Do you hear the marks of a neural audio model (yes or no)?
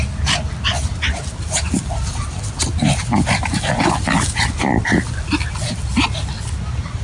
no